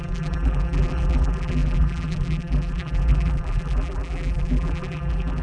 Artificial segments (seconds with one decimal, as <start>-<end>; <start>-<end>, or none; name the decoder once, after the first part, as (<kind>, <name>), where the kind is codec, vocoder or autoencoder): 0.0-5.4 (vocoder, BigVGAN v2)